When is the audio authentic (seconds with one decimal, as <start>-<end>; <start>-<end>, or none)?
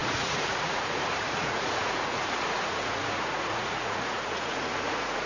none